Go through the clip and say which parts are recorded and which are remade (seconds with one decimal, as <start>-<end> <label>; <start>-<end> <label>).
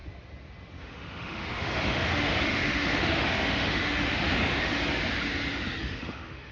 0.0-0.8 recorded; 0.8-4.8 remade; 4.8-5.8 recorded; 5.8-6.5 remade